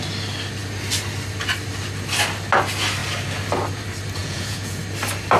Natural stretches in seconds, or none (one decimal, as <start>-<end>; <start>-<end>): 0.0-4.2; 4.8-5.4